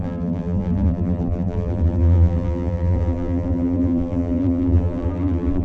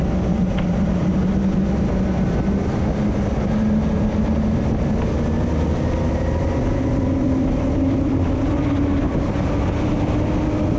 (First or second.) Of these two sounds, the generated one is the first